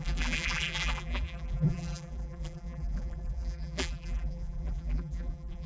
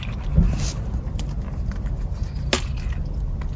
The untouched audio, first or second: second